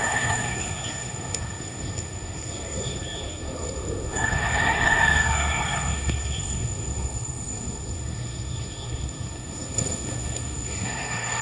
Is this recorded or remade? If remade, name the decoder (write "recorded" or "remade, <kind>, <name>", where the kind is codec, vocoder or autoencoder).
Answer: remade, codec, SNAC